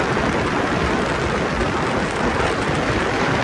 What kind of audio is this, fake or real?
real